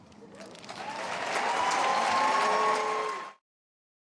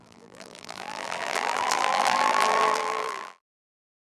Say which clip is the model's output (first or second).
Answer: second